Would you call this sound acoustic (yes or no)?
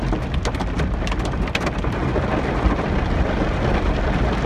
yes